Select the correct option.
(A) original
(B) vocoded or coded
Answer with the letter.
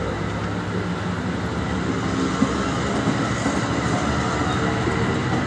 A